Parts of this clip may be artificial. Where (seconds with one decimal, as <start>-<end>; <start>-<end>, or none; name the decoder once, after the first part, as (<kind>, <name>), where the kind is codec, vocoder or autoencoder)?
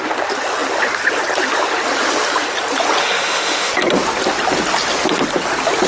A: 3.0-3.7 (autoencoder, DAC-VAE)